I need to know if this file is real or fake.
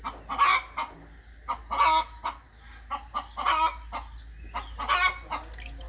real